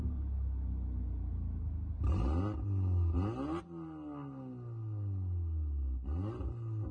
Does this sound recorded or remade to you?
recorded